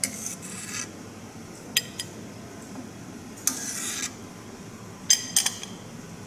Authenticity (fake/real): real